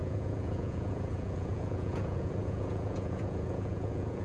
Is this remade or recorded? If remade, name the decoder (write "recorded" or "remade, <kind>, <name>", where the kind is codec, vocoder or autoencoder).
remade, vocoder, Vocos